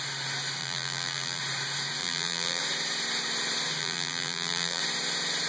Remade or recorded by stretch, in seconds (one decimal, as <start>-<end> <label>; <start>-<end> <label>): 0.0-0.6 recorded; 0.6-1.4 remade; 1.4-2.0 recorded; 2.0-2.6 remade; 2.6-3.8 recorded; 3.8-4.8 remade; 4.8-5.5 recorded